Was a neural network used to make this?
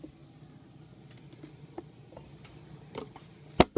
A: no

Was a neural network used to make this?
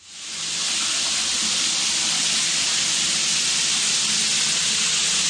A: no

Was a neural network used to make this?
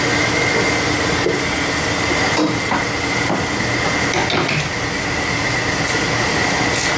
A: no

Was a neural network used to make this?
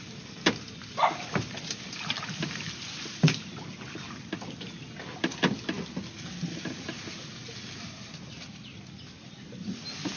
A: no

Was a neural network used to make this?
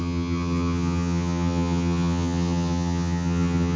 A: yes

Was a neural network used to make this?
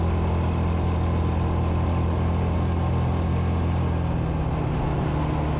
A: no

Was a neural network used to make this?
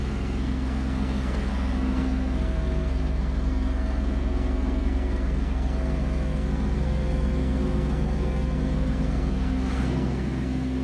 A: yes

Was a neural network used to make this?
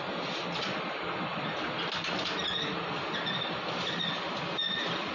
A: no